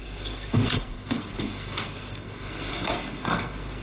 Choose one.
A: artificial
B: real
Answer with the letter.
A